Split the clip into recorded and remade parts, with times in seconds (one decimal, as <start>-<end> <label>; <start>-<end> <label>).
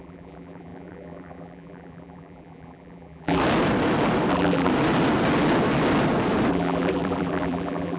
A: 0.0-3.4 remade; 3.4-4.3 recorded; 4.3-4.7 remade; 4.7-6.5 recorded; 6.5-8.0 remade